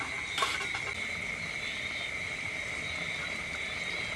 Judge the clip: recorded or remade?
recorded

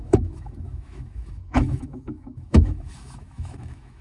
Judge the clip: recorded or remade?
remade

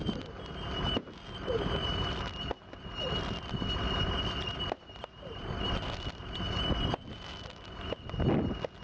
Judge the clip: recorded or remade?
recorded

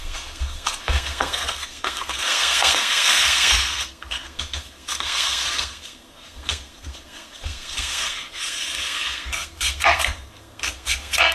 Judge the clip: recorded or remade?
remade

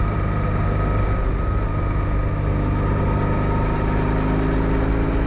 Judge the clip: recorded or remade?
recorded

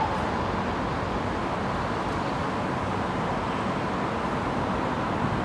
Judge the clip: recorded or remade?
recorded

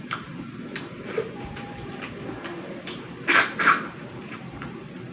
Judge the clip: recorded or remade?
remade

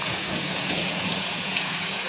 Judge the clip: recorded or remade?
remade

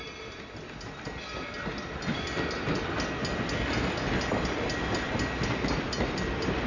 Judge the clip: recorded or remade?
recorded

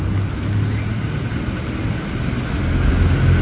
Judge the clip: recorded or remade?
recorded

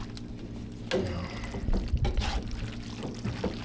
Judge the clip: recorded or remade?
recorded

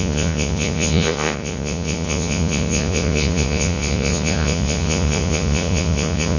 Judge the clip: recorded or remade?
remade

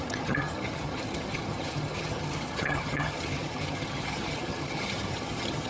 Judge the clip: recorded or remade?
remade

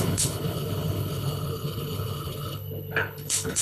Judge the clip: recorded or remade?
remade